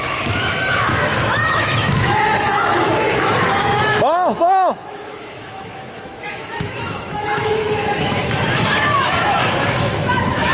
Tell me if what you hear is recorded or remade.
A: remade